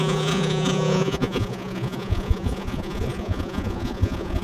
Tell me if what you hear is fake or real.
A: fake